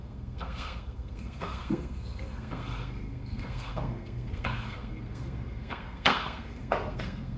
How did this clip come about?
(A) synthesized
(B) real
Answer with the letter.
A